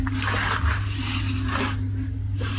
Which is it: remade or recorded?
recorded